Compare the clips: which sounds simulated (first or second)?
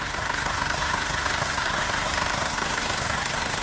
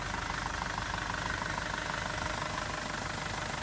first